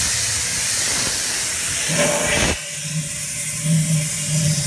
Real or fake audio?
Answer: real